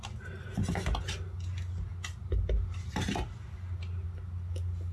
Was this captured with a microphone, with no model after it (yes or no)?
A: yes